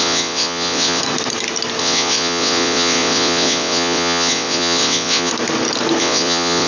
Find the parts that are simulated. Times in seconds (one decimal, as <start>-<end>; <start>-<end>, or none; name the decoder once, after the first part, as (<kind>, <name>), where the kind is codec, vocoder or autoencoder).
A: 0.0-1.0 (vocoder, WaveNeXt); 1.8-5.3; 6.0-6.7

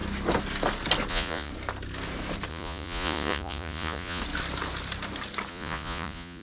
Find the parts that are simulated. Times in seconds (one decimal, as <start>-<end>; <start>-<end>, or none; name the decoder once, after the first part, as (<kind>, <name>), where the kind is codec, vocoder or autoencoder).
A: 1.1-1.5 (vocoder, Vocos); 2.5-4.2; 5.5-6.4

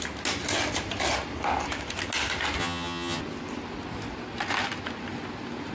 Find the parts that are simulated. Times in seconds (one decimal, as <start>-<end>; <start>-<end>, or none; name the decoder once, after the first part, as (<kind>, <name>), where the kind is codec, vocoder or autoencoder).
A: 2.6-3.2 (vocoder, HiFi-GAN)

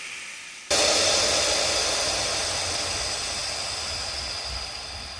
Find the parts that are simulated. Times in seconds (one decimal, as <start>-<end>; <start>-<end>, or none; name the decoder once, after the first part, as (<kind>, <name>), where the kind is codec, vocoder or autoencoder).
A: none

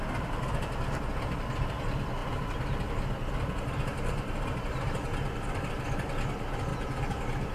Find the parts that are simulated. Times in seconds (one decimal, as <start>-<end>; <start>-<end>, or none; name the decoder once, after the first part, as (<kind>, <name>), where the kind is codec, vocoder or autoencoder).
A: none

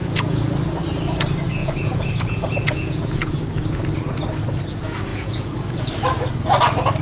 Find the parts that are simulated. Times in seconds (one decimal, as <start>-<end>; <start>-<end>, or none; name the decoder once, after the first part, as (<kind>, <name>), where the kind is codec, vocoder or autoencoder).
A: 0.0-0.5 (vocoder, Vocos); 1.6-3.3; 5.1-5.9